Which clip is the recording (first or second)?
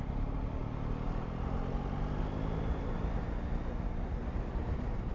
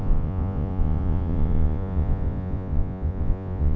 first